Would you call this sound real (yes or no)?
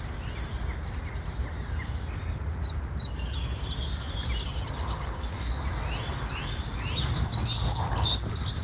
yes